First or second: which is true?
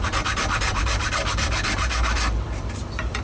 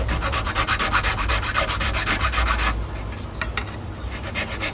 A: second